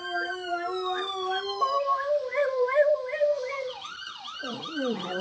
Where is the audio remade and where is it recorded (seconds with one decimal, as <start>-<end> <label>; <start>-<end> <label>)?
0.0-2.3 recorded; 2.3-5.2 remade